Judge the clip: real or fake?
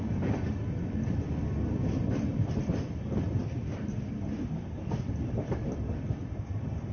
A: fake